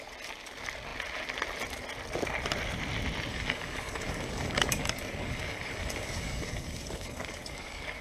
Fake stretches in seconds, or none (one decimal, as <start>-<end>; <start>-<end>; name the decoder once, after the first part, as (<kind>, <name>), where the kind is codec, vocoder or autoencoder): 3.3-8.0 (codec, DAC)